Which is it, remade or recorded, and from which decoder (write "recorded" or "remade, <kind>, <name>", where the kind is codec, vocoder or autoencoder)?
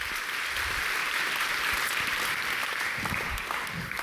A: recorded